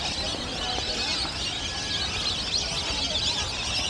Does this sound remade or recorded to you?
recorded